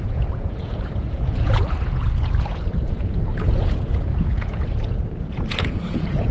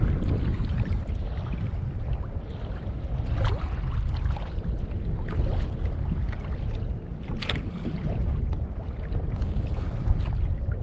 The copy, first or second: first